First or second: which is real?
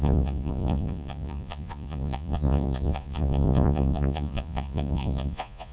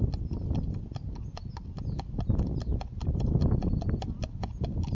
second